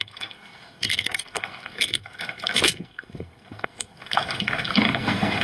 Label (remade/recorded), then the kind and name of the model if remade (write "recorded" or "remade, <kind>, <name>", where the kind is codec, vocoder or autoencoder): remade, codec, SNAC